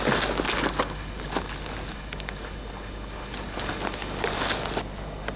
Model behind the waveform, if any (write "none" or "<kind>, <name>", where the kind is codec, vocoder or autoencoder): none